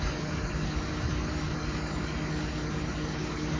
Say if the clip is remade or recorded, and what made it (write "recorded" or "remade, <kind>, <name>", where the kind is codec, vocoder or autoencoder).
remade, codec, DAC